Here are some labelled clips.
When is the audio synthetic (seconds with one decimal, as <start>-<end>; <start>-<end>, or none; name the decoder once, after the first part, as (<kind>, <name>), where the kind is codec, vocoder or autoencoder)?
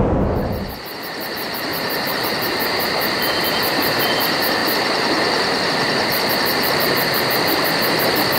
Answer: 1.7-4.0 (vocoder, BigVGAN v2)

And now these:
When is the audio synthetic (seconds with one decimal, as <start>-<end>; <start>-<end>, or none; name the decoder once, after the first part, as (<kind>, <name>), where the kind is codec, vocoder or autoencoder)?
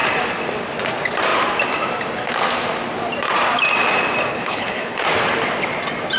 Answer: 4.3-5.0 (codec, HILCodec)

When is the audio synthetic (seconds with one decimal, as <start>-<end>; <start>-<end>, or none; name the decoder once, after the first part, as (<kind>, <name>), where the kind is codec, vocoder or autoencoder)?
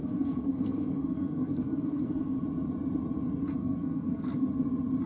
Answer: 0.0-2.4 (codec, SNAC); 3.6-4.5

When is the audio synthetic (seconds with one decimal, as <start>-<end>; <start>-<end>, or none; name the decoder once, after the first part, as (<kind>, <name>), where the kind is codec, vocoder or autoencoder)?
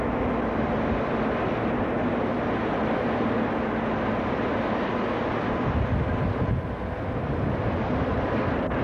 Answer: none